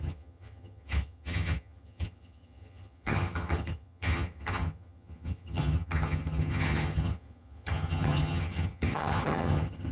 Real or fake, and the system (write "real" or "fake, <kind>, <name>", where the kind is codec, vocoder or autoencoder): fake, vocoder, HiFi-GAN